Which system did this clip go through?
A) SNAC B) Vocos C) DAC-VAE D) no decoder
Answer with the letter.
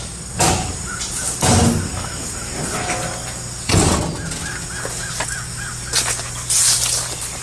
D